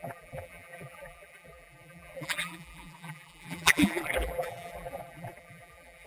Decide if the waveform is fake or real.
fake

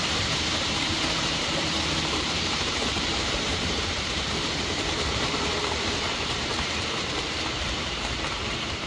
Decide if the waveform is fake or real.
fake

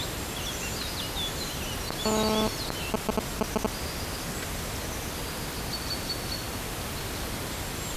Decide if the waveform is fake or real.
real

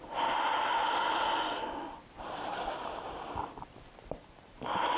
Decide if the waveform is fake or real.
fake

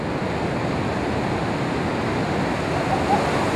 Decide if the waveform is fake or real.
real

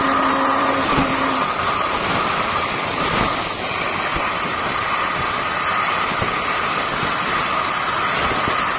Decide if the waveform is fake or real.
fake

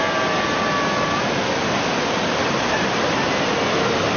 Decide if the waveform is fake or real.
real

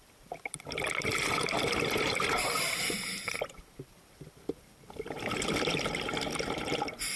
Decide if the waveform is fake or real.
fake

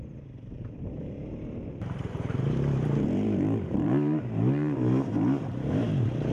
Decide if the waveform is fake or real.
fake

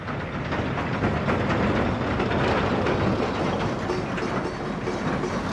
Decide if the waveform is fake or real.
real